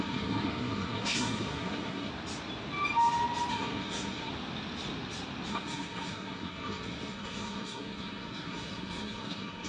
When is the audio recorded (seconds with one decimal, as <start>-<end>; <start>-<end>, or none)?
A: 2.1-3.5; 4.3-5.5